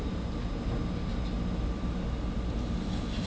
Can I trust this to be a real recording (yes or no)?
yes